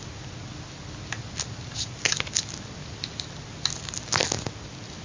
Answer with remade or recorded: recorded